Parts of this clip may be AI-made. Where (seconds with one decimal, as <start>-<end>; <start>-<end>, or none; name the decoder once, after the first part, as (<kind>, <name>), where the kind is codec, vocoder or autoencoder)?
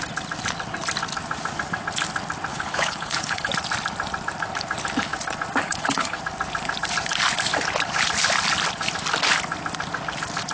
2.5-3.5 (codec, HILCodec); 5.6-6.2